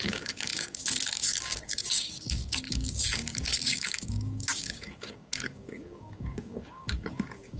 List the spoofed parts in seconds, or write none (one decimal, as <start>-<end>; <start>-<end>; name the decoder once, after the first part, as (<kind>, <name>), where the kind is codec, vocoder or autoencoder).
0.0-7.6 (codec, DAC)